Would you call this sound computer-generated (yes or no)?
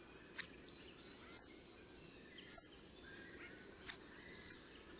no